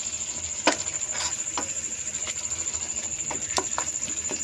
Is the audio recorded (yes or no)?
yes